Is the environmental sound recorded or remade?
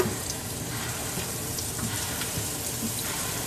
remade